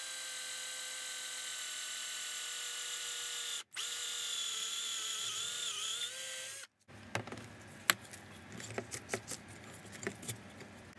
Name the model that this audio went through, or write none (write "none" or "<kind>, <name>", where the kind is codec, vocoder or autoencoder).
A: none